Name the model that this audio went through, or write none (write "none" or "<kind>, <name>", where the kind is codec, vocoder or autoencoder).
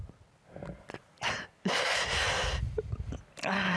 none